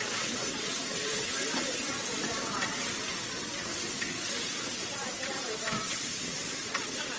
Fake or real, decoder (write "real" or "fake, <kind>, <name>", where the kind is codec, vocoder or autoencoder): fake, vocoder, WaveNeXt